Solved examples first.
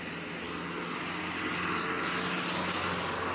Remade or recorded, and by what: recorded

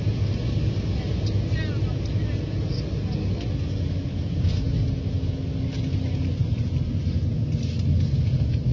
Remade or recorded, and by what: recorded